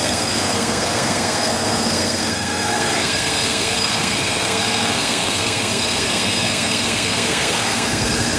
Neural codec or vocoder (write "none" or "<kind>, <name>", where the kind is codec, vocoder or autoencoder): codec, SNAC